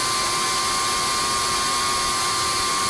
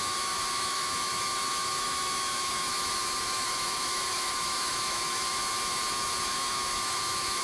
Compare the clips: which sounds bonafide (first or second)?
first